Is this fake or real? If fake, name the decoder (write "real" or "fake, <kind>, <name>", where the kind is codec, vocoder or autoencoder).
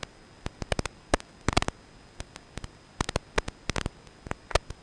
real